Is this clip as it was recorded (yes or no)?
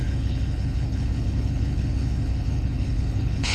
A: no